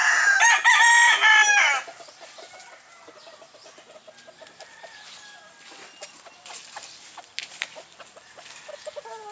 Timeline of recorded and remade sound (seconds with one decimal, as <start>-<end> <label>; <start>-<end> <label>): 0.0-9.3 recorded